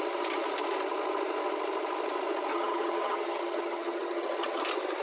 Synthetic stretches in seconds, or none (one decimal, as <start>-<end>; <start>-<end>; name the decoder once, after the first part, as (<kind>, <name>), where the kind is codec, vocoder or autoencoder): 2.5-4.6 (vocoder, HiFi-GAN)

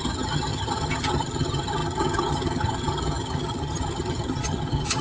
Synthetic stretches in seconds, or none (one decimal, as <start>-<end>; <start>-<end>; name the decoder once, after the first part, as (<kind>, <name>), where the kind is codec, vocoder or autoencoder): 0.0-5.0 (vocoder, HiFi-GAN)

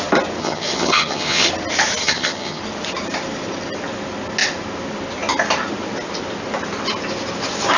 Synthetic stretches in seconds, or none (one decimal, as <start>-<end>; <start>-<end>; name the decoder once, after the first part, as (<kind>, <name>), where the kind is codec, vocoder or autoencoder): 0.4-1.5 (vocoder, HiFi-GAN); 2.0-2.6

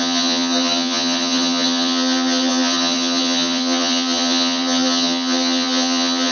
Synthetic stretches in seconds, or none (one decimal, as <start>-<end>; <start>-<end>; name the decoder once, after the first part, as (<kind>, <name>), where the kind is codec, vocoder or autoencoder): 0.0-6.3 (vocoder, HiFi-GAN)